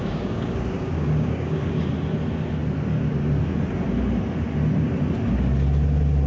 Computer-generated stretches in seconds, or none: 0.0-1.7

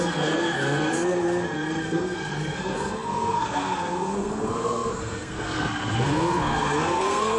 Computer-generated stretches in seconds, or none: 0.0-7.4

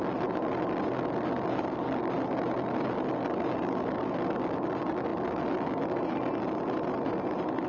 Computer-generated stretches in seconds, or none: none

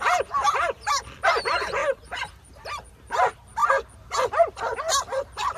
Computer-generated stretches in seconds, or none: none

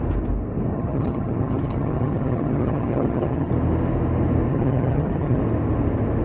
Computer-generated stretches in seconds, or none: 0.7-3.5; 4.5-5.4